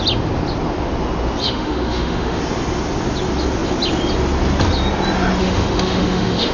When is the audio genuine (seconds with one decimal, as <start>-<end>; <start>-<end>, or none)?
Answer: 0.0-1.4; 2.4-5.4

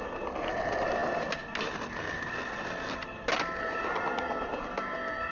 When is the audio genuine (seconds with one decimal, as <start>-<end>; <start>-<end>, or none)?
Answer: 0.0-5.3

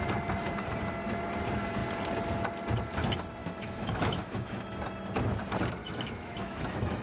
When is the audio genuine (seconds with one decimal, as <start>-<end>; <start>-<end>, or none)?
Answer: 0.0-3.4; 4.8-5.8

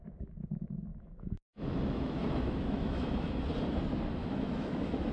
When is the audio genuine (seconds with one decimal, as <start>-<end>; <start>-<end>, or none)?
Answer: 0.0-0.9; 3.3-4.2

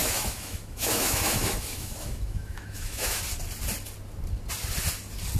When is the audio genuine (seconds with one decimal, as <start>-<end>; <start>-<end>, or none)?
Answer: 3.2-5.4

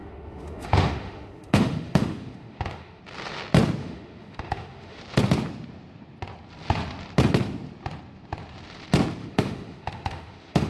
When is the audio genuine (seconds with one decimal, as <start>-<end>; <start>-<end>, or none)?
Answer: 3.0-3.8; 5.0-9.2